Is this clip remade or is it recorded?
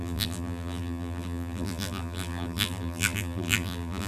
remade